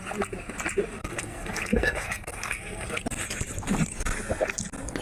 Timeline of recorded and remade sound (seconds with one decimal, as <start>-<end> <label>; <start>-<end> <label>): 0.0-1.0 recorded; 1.0-3.0 remade; 3.0-5.0 recorded